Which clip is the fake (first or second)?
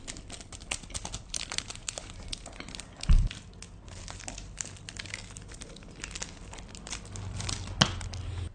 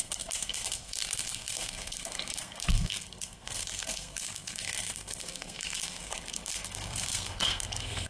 second